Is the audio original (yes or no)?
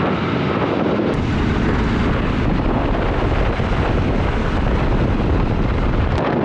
yes